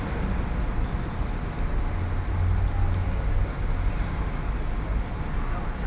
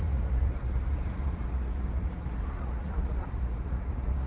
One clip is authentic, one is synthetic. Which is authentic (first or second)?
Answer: first